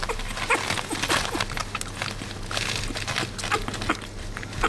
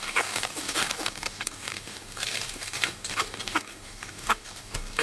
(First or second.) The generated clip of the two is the second